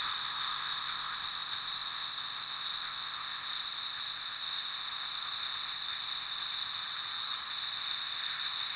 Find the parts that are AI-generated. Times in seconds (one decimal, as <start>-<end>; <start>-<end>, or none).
0.0-6.8; 7.5-8.8